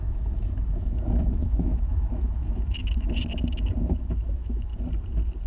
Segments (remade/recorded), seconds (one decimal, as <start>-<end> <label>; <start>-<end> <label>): 0.0-3.2 remade; 3.2-4.0 recorded; 4.0-4.7 remade; 4.7-5.5 recorded